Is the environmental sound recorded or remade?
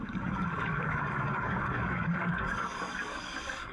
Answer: remade